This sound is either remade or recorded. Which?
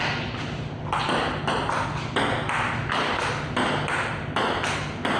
recorded